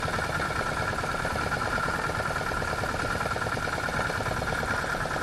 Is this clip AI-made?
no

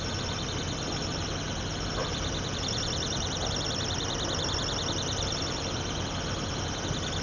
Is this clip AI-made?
no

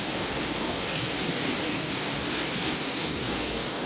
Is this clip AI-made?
yes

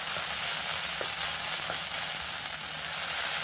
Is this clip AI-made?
no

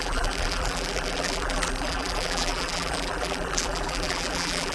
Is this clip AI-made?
yes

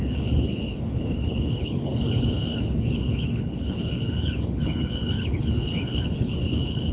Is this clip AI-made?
yes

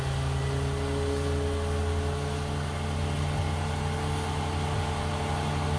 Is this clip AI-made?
no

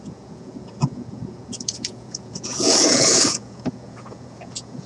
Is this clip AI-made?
yes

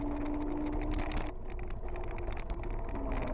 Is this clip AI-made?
no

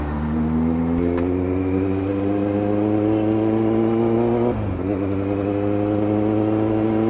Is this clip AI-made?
no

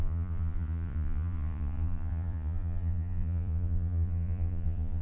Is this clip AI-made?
yes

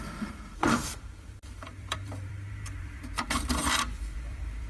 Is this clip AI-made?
yes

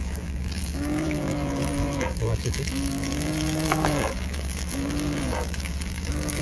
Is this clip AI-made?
yes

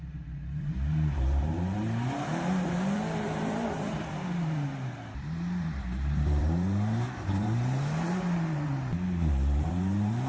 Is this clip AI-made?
yes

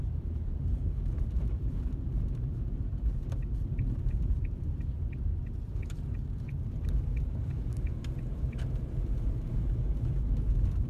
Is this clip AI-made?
yes